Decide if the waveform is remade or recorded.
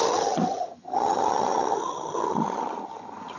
remade